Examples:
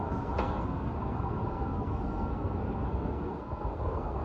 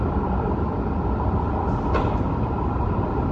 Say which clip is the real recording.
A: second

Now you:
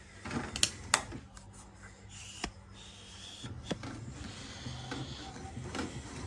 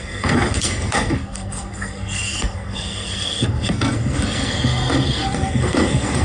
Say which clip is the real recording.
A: first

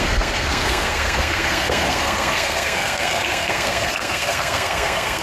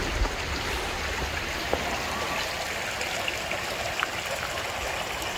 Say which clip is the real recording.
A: second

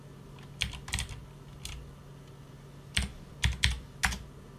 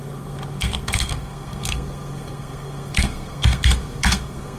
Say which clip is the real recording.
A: first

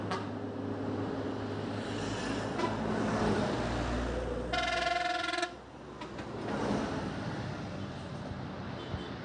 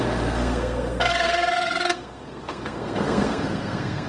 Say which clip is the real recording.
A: first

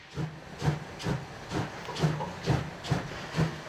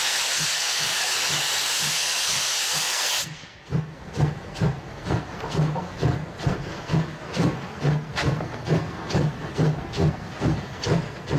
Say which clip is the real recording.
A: first